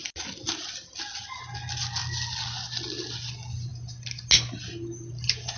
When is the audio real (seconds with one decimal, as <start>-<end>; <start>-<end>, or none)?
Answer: 0.0-5.6